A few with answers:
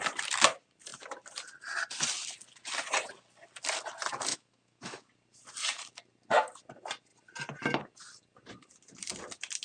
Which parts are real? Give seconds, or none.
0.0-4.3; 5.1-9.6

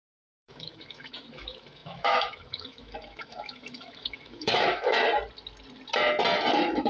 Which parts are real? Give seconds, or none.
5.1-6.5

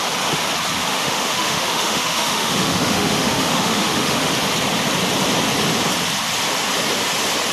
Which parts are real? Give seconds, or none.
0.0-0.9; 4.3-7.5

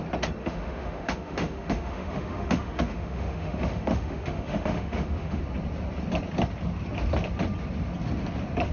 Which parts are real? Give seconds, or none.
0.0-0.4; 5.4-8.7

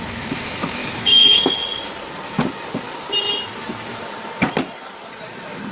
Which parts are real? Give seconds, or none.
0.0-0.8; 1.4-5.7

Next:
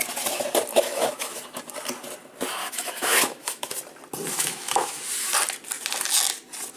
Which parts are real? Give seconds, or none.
0.0-0.7; 1.4-2.6; 3.7-4.3; 5.0-6.8

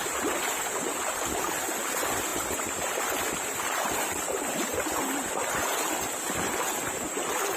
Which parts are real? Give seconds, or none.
0.0-7.6

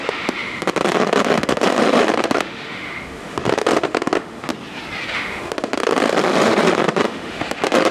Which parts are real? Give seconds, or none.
4.5-5.1